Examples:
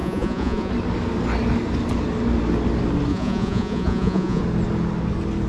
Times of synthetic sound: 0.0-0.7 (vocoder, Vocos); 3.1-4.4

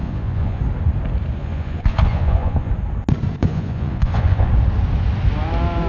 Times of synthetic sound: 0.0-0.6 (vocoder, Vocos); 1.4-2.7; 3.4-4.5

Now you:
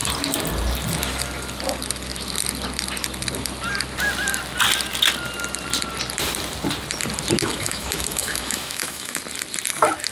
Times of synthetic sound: 7.4-9.2 (autoencoder, DAC-VAE)

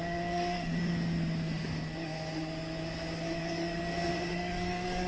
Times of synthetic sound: 0.0-0.9 (codec, DAC); 3.4-3.8; 4.3-5.1

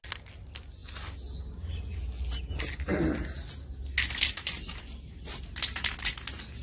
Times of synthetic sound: none

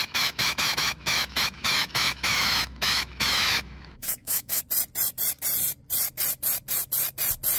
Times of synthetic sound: 0.0-4.6 (autoencoder, DAC-VAE)